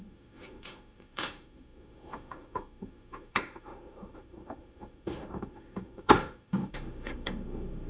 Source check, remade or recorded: remade